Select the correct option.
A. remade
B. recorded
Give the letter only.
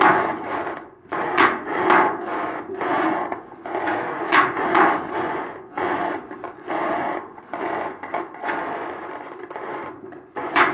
A